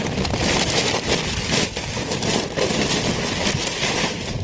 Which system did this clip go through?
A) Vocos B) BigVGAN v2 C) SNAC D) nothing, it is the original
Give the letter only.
B